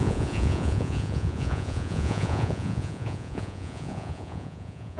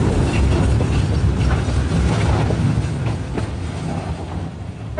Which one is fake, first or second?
first